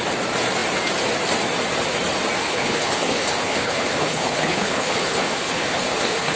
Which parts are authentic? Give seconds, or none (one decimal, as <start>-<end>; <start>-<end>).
0.0-2.4